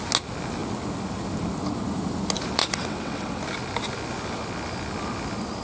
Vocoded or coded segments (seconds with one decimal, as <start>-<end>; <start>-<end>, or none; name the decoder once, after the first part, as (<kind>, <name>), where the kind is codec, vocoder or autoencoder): 2.6-3.4 (vocoder, WaveNeXt)